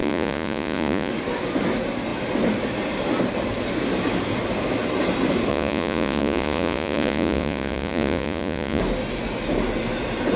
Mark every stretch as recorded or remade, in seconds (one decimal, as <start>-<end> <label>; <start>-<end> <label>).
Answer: 0.0-1.1 remade; 1.1-5.5 recorded; 5.5-8.8 remade; 8.8-10.4 recorded